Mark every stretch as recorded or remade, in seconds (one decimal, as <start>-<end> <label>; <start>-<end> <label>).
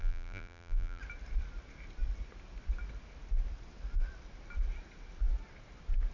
0.0-1.0 remade; 1.0-6.1 recorded